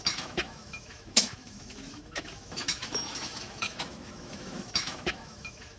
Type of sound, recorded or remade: remade